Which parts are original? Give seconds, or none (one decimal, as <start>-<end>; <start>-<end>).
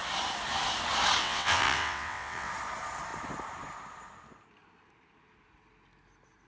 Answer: 0.0-1.2; 2.5-6.5